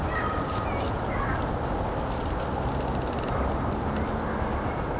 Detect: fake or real real